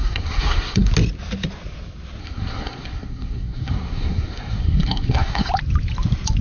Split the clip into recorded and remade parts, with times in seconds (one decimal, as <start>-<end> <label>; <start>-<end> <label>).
0.0-0.9 remade; 0.9-2.2 recorded; 2.2-5.5 remade; 5.5-6.4 recorded

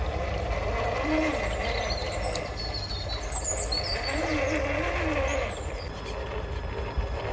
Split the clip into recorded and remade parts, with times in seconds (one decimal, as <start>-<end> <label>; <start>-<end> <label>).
0.0-7.3 recorded

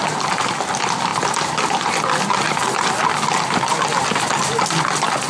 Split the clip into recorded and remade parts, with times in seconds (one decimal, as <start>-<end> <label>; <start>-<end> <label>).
0.0-5.3 recorded

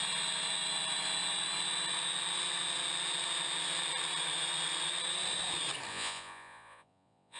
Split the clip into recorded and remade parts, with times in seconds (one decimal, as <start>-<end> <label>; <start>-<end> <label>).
0.0-5.9 recorded; 5.9-7.4 remade

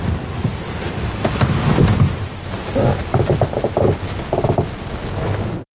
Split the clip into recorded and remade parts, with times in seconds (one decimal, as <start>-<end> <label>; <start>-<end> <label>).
0.0-5.8 recorded

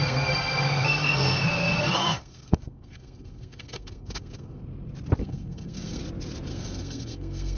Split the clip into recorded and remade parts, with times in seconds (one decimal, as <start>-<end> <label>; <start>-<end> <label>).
0.0-4.6 remade; 4.6-5.2 recorded; 5.2-6.0 remade; 6.0-6.5 recorded; 6.5-7.6 remade

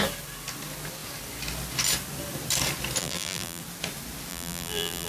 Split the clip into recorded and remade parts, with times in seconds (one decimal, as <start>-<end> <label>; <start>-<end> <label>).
0.0-3.0 recorded; 3.0-3.6 remade; 3.6-4.3 recorded; 4.3-5.1 remade